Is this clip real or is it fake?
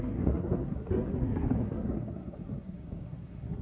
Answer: fake